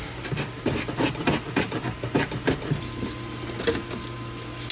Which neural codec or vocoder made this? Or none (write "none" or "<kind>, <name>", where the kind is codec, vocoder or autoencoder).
none